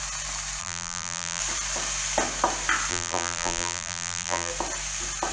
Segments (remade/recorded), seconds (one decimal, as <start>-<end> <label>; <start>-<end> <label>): 0.0-0.6 recorded; 0.6-1.4 remade; 1.4-2.9 recorded; 2.9-4.5 remade; 4.5-5.3 recorded